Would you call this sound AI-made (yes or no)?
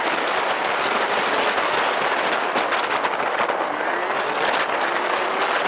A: no